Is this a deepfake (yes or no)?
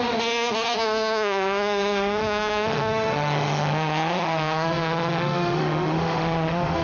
yes